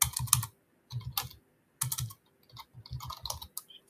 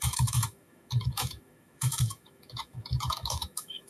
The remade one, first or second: second